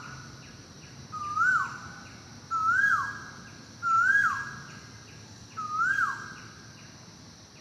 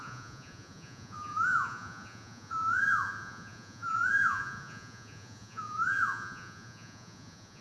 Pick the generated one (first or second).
second